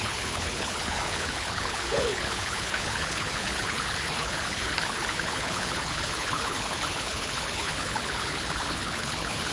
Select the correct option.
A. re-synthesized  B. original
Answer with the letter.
A